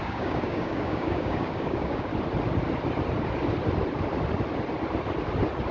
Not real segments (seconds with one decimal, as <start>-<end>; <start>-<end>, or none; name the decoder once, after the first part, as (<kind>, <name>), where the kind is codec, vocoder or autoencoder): 0.0-2.1 (codec, DAC)

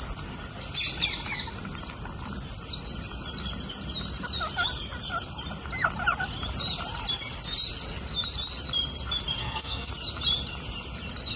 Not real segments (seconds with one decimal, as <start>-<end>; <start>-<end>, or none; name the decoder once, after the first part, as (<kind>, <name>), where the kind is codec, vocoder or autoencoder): 9.4-9.9 (codec, SNAC)

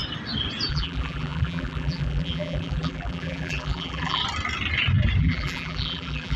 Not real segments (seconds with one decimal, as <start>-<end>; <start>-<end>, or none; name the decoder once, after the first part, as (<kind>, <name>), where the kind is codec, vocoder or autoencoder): 0.7-4.2 (vocoder, BigVGAN v2); 5.2-6.4